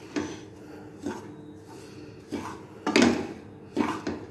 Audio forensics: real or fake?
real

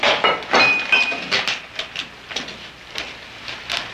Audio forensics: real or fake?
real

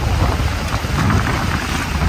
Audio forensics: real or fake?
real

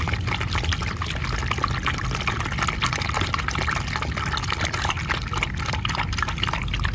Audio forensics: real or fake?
real